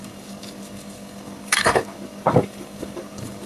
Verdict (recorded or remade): remade